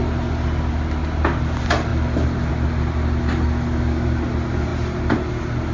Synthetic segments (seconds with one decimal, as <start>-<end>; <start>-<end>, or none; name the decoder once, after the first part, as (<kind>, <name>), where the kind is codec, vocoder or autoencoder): none